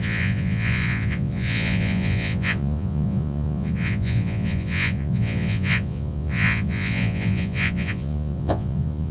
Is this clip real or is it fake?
fake